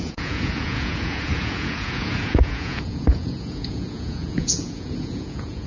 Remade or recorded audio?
remade